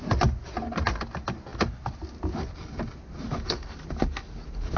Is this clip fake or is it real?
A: real